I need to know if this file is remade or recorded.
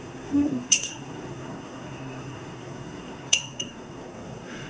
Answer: remade